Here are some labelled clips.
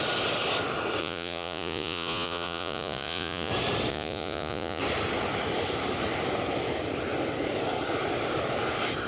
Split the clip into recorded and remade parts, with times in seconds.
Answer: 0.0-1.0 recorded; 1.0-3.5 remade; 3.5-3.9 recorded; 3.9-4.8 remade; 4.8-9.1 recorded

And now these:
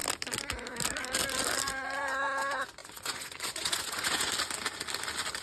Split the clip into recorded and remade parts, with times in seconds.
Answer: 0.0-2.8 recorded; 2.8-4.3 remade; 4.3-5.4 recorded

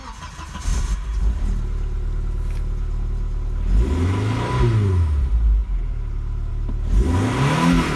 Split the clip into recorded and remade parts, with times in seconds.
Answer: 0.0-8.0 recorded

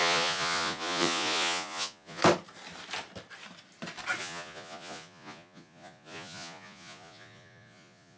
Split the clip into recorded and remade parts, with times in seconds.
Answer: 0.0-2.2 remade; 2.2-4.2 recorded; 4.2-8.2 remade

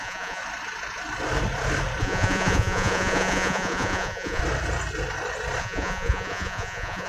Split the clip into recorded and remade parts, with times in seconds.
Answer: 0.0-0.4 remade; 0.4-2.0 recorded; 2.0-4.4 remade; 4.4-5.6 recorded; 5.6-7.1 remade